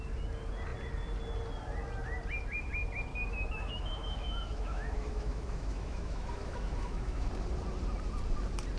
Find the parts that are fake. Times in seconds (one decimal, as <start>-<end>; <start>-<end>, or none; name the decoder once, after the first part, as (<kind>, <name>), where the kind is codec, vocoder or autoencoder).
3.1-7.3 (autoencoder, DAC-VAE)